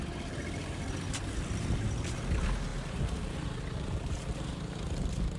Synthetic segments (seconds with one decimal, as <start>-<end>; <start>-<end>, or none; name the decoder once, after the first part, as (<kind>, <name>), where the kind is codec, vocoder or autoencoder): none